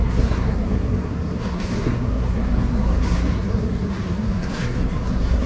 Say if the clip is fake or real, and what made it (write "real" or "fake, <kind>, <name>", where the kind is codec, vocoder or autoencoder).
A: fake, codec, SNAC